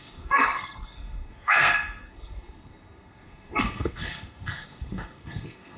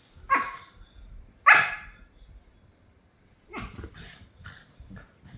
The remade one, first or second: first